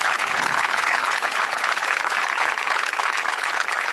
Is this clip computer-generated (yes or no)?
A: yes